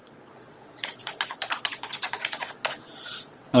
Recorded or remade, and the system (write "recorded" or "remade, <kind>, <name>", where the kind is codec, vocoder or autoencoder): remade, vocoder, Vocos